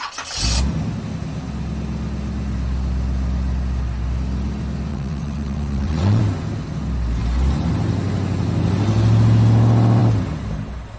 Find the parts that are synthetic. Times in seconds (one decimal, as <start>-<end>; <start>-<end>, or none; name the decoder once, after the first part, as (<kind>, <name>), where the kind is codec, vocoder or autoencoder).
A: 4.9-6.2 (vocoder, WaveNeXt)